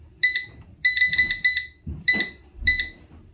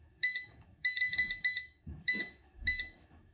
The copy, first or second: second